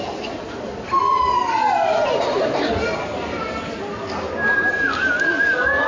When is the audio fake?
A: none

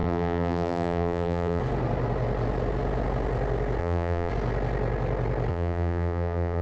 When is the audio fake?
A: 0.0-1.6 (vocoder, BigVGAN v2); 3.8-4.3; 5.5-6.6

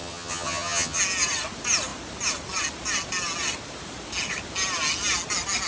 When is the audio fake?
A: 0.0-1.0 (vocoder, HiFi-GAN)

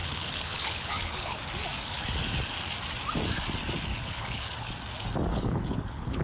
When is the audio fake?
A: 0.0-1.4 (codec, HILCodec); 3.9-4.7; 5.3-6.2

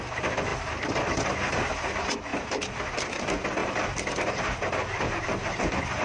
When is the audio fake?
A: 0.5-1.3 (vocoder, BigVGAN v2); 3.6-4.4

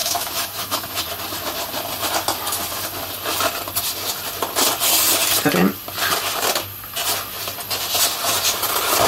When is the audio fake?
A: 0.0-1.0 (autoencoder, DAC-VAE)

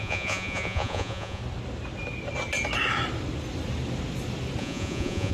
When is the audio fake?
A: 0.0-1.4 (vocoder, Vocos); 4.6-5.3